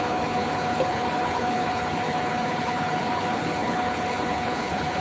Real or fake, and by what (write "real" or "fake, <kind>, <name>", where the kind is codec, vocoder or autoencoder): fake, codec, HILCodec